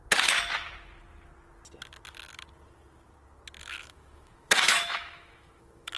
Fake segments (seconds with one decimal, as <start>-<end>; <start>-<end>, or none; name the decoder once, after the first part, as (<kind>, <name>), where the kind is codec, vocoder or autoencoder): 3.6-6.0 (autoencoder, DAC-VAE)